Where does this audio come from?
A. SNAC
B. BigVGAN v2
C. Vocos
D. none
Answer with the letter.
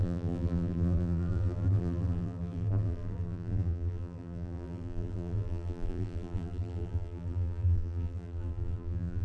B